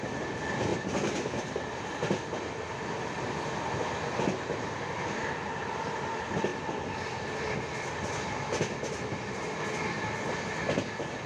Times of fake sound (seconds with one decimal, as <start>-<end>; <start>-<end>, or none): 0.7-1.8

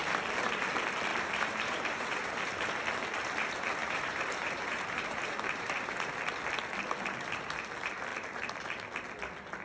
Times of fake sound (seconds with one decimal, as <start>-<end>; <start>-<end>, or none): 1.1-2.5; 3.8-6.1

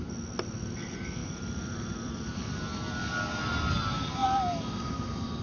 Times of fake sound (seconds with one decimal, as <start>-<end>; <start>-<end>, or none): 1.2-2.3; 4.2-5.4

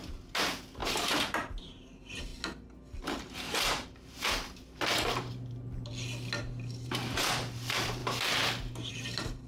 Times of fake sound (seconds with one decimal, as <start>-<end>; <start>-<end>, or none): 0.0-2.3; 3.0-5.9; 6.4-9.5